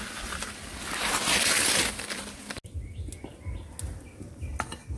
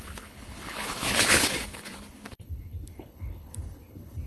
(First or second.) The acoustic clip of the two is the first